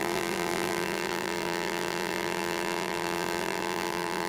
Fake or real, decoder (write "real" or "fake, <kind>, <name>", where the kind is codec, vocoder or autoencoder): fake, vocoder, BigVGAN v2